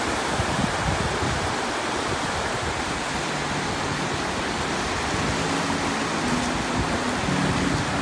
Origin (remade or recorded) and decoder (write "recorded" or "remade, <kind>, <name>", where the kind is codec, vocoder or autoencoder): recorded